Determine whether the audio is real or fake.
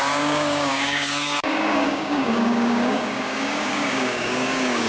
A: fake